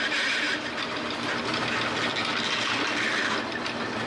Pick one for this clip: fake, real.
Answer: real